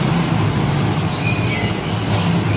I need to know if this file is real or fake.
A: real